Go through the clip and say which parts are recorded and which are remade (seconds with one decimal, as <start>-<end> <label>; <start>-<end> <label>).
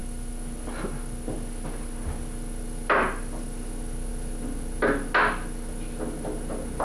0.0-6.8 recorded